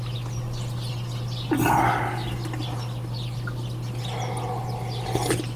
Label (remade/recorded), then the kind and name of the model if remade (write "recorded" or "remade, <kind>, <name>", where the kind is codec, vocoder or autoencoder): recorded